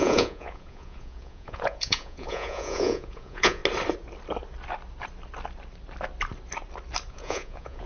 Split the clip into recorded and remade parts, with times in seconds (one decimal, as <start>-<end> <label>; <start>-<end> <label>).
0.0-3.6 remade; 3.6-7.1 recorded; 7.1-7.9 remade